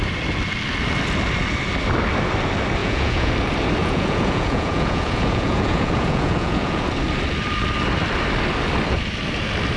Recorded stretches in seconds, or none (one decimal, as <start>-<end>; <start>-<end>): 0.0-2.8; 3.3-3.8; 6.8-9.8